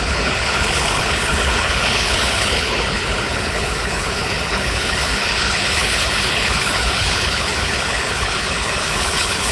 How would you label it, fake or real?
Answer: fake